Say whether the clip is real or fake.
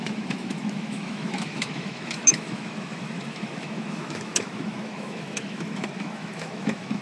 fake